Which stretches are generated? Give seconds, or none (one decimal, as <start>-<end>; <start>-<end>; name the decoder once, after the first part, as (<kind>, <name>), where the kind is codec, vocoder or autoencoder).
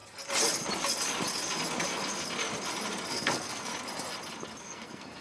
3.1-3.7 (codec, SNAC); 4.6-5.2